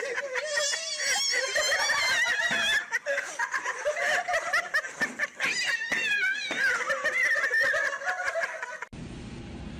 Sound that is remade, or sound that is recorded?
recorded